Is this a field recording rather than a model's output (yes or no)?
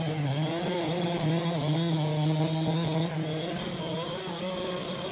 yes